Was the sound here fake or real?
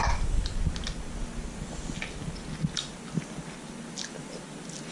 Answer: real